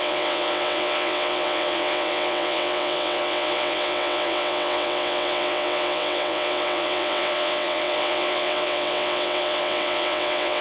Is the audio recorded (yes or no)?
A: no